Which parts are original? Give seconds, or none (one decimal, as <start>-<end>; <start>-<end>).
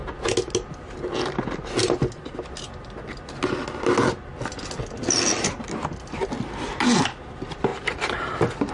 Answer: 0.0-8.7